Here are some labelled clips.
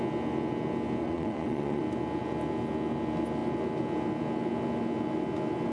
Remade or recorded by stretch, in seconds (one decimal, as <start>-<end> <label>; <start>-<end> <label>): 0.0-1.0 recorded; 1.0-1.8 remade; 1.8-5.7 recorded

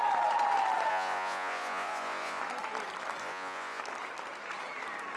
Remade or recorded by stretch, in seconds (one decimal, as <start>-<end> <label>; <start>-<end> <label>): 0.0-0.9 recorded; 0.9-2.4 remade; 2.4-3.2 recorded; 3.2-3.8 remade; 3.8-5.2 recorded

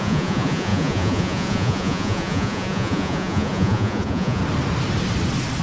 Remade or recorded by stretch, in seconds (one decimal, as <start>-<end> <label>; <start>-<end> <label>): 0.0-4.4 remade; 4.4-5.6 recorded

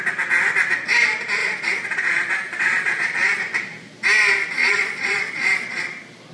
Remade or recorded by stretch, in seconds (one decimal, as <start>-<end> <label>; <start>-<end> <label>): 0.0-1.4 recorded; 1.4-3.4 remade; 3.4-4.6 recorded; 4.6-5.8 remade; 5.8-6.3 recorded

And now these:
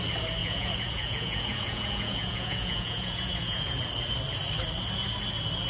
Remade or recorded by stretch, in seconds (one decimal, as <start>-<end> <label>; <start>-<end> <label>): 0.0-0.4 recorded; 0.4-3.8 remade; 3.8-5.7 recorded